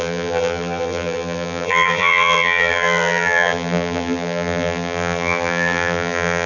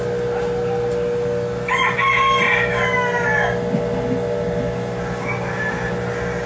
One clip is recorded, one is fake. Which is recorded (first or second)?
second